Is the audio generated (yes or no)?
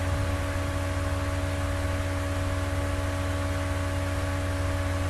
no